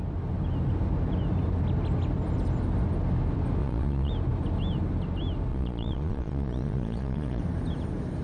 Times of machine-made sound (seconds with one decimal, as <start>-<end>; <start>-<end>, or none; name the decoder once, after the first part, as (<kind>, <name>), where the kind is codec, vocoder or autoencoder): 3.6-4.1 (vocoder, Vocos); 5.5-7.4